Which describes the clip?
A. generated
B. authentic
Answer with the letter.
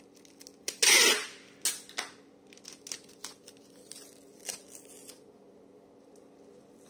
B